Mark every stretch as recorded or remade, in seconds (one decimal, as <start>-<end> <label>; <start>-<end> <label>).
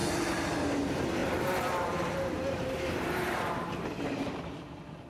0.0-1.2 recorded; 1.2-4.3 remade; 4.3-5.1 recorded